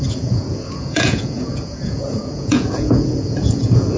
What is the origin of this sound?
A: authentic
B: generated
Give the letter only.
B